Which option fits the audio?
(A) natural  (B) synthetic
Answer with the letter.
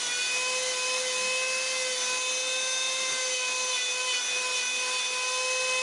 A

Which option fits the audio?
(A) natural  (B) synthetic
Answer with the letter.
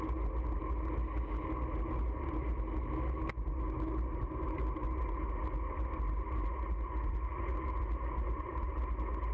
A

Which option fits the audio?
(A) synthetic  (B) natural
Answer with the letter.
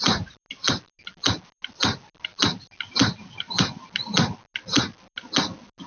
B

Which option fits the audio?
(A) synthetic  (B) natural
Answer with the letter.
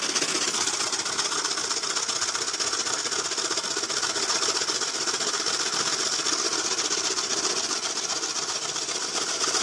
B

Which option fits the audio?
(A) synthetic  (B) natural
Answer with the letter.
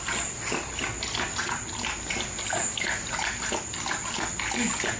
B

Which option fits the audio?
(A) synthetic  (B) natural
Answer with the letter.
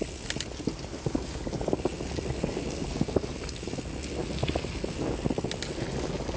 B